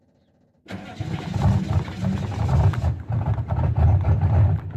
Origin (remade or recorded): recorded